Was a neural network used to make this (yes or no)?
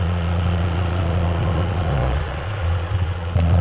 yes